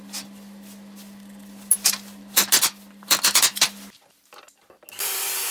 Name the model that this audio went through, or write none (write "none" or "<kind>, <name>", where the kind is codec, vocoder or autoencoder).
none